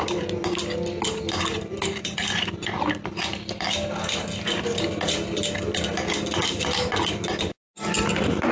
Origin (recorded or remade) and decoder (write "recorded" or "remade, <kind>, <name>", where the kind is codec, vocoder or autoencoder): recorded